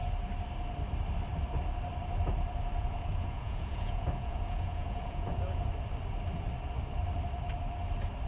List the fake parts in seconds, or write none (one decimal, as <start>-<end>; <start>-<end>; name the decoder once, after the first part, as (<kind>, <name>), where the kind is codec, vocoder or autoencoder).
2.8-5.7 (vocoder, Vocos)

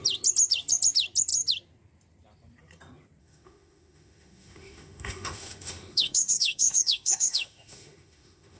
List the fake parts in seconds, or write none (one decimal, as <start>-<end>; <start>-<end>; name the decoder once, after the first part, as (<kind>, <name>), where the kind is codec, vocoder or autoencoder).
3.2-8.6 (autoencoder, DAC-VAE)

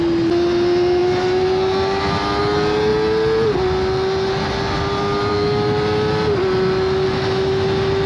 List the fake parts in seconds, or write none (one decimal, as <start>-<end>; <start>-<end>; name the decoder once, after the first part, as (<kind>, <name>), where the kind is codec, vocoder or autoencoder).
none

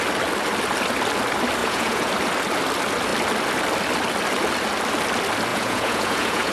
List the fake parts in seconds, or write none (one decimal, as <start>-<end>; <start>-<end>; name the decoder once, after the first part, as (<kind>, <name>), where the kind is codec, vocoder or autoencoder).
1.6-2.1 (vocoder, Vocos); 5.5-6.5

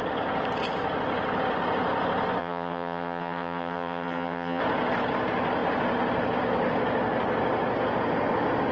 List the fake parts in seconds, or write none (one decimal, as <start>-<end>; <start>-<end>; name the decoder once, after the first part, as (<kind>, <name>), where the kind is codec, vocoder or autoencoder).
2.4-4.6 (vocoder, HiFi-GAN)

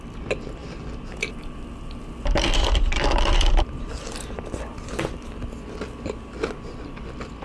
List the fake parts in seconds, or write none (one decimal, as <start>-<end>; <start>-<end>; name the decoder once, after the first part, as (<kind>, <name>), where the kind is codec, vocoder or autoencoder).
0.6-4.0 (vocoder, BigVGAN v2)